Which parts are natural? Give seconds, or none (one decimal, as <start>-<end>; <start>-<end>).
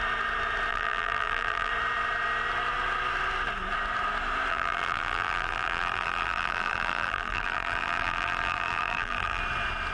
0.0-0.7; 1.7-4.5; 9.4-9.9